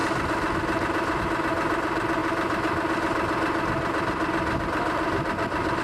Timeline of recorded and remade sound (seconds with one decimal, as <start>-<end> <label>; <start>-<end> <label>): 0.0-5.8 recorded